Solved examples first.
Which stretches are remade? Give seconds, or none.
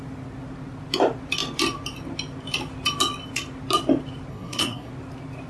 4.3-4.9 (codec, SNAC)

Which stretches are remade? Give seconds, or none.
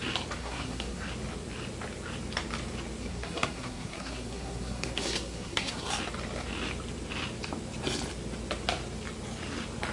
0.4-1.1 (codec, SNAC); 3.0-5.9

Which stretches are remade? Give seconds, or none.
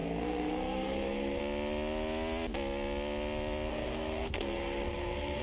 0.0-1.4 (codec, SNAC); 3.7-5.4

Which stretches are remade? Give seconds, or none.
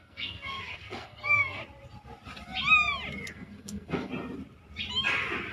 0.0-1.6 (codec, SNAC); 3.3-4.1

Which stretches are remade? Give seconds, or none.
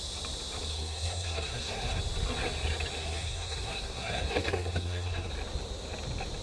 0.7-2.0 (codec, SNAC); 3.0-5.3